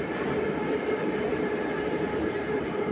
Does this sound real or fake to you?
real